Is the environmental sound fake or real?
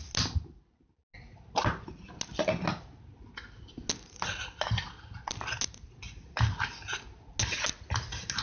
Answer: real